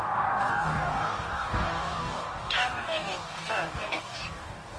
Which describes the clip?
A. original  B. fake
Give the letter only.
B